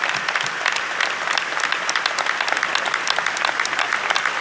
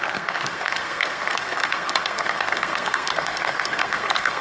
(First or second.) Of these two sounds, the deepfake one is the second